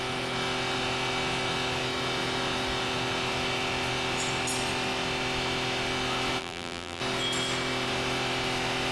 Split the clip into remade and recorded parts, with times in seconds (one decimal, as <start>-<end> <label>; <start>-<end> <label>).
0.0-6.4 recorded; 6.4-7.0 remade; 7.0-8.9 recorded